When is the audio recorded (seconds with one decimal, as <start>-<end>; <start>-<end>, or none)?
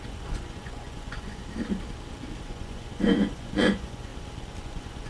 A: 1.4-2.4; 4.1-4.6